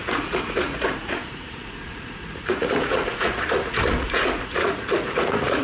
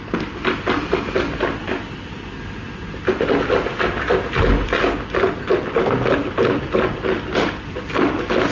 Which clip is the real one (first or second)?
second